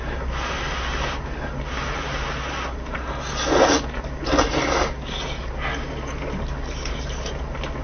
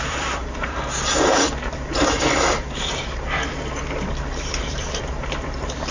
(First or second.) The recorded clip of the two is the first